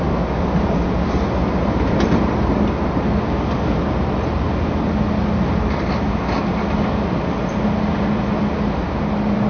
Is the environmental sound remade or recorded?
recorded